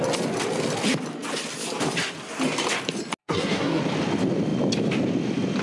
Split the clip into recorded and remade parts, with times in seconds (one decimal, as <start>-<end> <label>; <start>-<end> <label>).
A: 0.0-3.2 recorded; 3.2-3.8 remade; 3.8-5.6 recorded